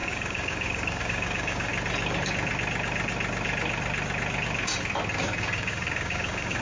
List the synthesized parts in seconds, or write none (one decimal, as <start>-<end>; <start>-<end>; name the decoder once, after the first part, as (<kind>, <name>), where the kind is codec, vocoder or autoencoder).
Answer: 0.0-1.7 (codec, DAC); 5.2-6.6